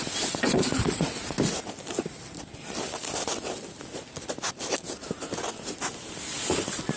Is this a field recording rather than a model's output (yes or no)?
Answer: yes